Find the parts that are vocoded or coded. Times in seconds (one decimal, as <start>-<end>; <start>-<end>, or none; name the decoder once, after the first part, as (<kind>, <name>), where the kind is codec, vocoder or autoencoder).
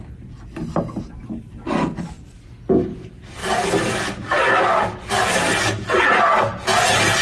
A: none